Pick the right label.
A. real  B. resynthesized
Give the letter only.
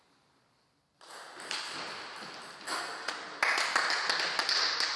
A